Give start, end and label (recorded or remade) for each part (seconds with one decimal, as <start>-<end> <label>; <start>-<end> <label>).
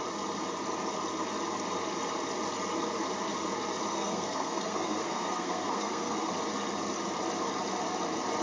0.0-3.9 recorded; 3.9-6.3 remade; 6.3-8.4 recorded